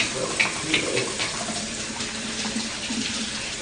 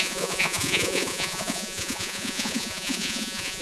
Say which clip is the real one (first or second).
first